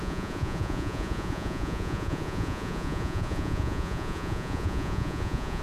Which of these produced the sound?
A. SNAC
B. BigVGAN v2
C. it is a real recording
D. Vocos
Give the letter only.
D